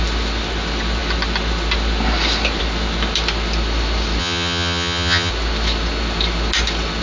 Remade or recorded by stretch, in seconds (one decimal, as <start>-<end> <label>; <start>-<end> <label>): 0.0-4.2 recorded; 4.2-5.3 remade; 5.3-7.0 recorded